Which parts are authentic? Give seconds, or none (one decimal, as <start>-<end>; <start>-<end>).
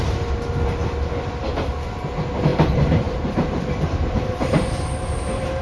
0.0-2.5